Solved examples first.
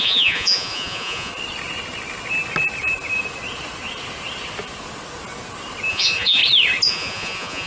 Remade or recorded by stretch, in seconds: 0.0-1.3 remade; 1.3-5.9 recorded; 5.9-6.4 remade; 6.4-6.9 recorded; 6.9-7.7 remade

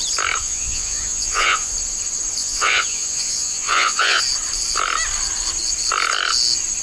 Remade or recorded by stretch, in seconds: 0.0-0.4 recorded; 0.4-1.7 remade; 1.7-2.4 recorded; 2.4-4.2 remade; 4.2-6.8 recorded